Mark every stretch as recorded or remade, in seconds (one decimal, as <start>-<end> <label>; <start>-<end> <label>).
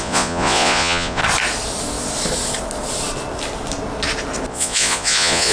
0.0-1.2 remade; 1.2-4.5 recorded; 4.5-5.5 remade